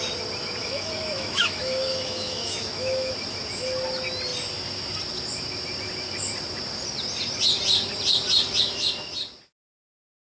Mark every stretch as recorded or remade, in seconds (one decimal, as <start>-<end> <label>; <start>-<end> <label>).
0.0-0.6 recorded; 0.6-3.1 remade; 3.1-10.2 recorded